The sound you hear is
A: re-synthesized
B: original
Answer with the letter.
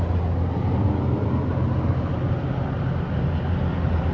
B